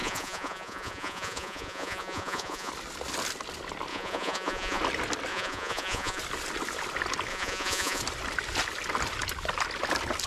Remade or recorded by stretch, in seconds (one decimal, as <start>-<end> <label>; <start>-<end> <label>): 0.0-2.7 remade; 2.7-3.9 recorded; 3.9-4.8 remade; 4.8-5.3 recorded; 5.3-6.2 remade; 6.2-7.3 recorded; 7.3-8.0 remade; 8.0-10.3 recorded